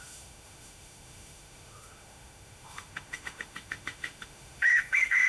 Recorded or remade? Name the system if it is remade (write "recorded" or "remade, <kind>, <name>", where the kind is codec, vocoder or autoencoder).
remade, autoencoder, DAC-VAE